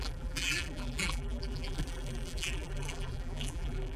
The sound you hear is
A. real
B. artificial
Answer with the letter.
B